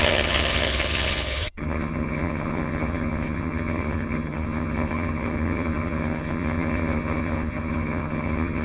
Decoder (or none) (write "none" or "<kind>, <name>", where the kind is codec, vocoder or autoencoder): vocoder, HiFi-GAN